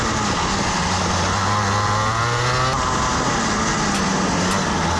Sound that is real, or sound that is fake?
real